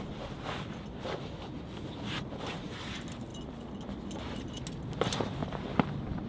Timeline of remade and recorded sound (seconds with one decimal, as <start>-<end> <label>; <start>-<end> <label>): 0.0-6.3 recorded